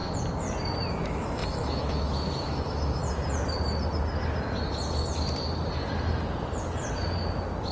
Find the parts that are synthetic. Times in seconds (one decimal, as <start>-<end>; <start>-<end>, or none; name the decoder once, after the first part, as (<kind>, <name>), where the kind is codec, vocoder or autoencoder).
0.9-3.0 (autoencoder, DAC-VAE)